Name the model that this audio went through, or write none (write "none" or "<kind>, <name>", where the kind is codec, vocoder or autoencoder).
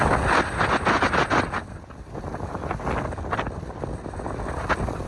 none